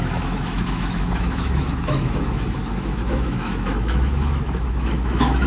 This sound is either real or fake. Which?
fake